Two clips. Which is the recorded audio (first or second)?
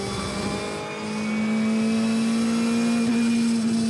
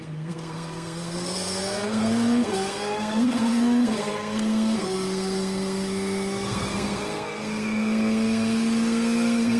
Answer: first